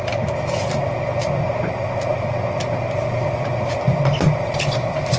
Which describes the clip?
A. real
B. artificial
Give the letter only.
A